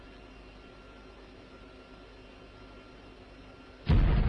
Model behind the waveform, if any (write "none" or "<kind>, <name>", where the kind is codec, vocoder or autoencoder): none